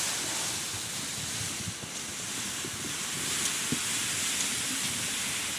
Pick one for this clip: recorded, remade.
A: recorded